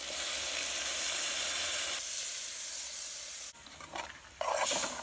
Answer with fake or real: real